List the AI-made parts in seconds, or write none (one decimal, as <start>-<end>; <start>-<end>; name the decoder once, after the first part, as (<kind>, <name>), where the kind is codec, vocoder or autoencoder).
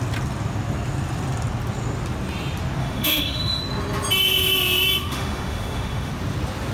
2.8-3.6 (autoencoder, DAC-VAE); 5.0-6.1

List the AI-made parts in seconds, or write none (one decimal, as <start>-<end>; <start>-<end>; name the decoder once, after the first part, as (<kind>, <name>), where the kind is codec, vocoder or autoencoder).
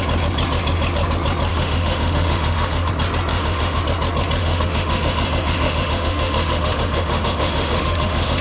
1.5-2.9 (autoencoder, DAC-VAE); 3.3-3.8; 4.4-8.4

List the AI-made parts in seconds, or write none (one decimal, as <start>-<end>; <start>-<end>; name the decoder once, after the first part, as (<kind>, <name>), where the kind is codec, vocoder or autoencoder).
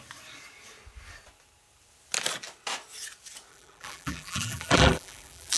3.5-5.6 (vocoder, BigVGAN v2)